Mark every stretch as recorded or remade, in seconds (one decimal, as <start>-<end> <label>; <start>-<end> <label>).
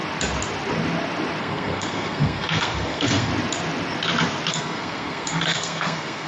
0.0-1.4 recorded; 1.4-3.3 remade; 3.3-4.5 recorded; 4.5-6.3 remade